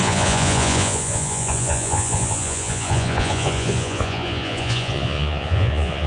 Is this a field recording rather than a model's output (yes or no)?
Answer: no